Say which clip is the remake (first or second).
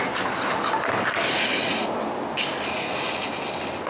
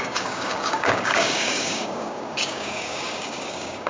second